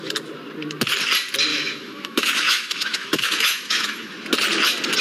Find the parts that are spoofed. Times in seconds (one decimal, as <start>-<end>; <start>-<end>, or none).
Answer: 1.5-4.1